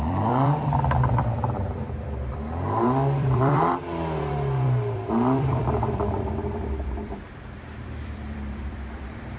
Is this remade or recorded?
remade